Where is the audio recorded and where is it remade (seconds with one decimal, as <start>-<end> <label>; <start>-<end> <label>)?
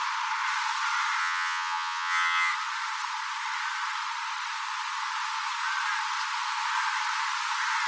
0.0-1.2 recorded; 1.2-2.5 remade; 2.5-7.9 recorded